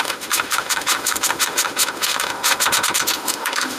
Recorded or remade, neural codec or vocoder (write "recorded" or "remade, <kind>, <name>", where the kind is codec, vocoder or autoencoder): remade, autoencoder, DAC-VAE